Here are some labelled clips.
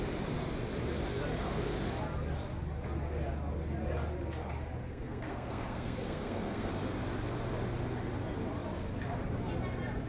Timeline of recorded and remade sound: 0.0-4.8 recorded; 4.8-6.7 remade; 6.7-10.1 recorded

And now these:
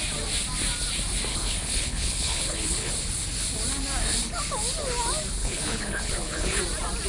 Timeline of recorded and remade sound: 0.0-1.3 recorded; 1.3-2.9 remade; 2.9-5.4 recorded; 5.4-6.6 remade; 6.6-7.1 recorded